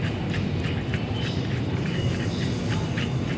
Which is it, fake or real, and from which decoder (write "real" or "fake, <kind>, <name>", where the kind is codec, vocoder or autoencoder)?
real